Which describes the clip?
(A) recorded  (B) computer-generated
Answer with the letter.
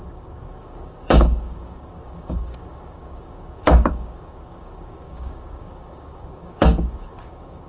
B